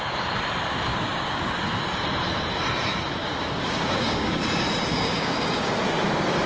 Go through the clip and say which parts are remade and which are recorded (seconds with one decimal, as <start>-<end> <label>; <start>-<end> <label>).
0.0-0.9 recorded; 0.9-1.6 remade; 1.6-3.2 recorded; 3.2-4.4 remade; 4.4-4.9 recorded; 4.9-5.9 remade; 5.9-6.5 recorded